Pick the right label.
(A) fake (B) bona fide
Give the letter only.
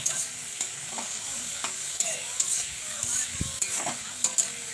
A